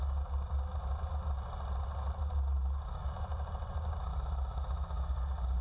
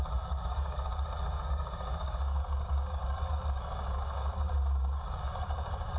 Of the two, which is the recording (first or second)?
first